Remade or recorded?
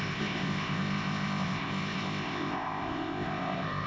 remade